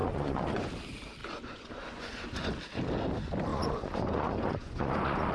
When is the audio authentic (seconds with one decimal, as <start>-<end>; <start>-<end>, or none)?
0.7-1.2; 2.5-3.5